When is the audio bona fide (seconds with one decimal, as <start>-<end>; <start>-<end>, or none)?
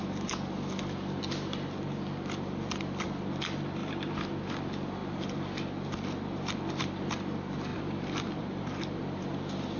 0.0-3.8; 4.3-7.7; 9.0-9.8